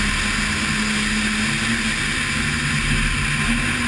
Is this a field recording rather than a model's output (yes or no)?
yes